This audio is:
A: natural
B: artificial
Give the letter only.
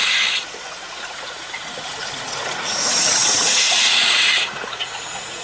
B